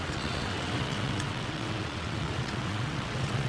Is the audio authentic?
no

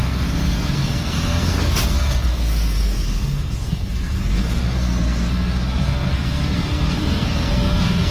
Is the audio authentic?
no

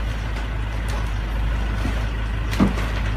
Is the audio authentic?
yes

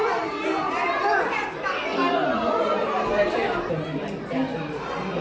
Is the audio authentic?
yes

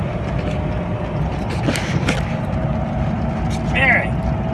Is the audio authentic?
yes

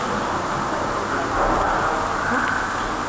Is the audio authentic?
yes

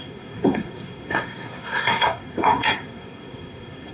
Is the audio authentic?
no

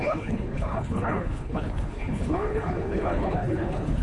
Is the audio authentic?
no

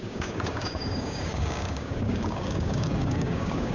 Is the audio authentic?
no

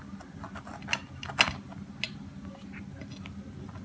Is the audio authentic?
yes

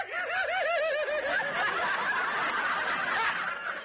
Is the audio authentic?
yes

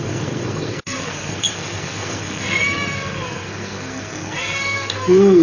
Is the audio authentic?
no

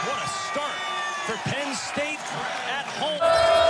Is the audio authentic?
yes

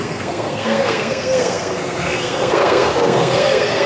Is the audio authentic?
no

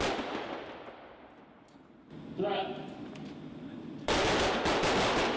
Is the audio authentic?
yes